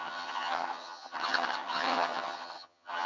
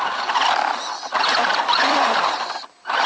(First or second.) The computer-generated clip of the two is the first